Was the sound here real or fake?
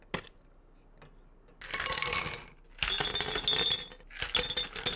real